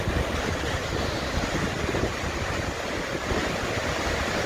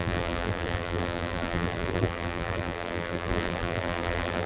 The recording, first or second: first